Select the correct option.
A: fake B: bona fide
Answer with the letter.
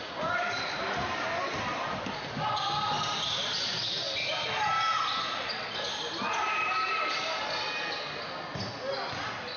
B